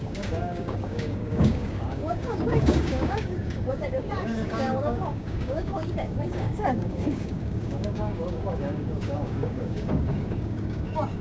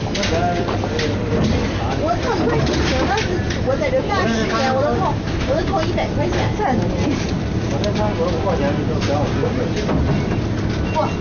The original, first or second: second